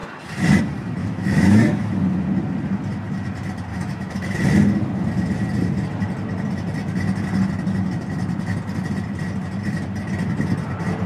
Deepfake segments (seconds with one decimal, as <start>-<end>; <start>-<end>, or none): 1.0-1.8; 3.7-4.4